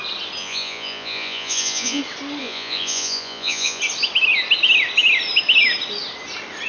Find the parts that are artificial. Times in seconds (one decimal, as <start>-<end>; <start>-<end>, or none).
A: 0.4-2.0; 2.4-3.8